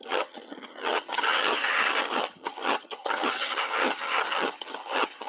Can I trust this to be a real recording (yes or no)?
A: no